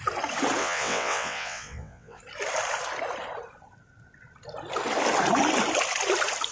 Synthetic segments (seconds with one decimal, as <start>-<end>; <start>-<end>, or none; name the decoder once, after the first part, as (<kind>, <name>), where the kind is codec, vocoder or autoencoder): 0.6-2.2 (vocoder, WaveNeXt)